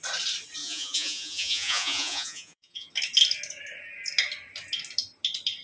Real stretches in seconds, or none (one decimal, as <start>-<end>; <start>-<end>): 0.0-0.6; 2.9-5.6